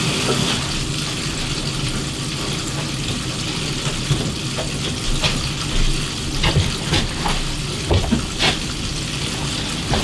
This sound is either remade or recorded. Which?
recorded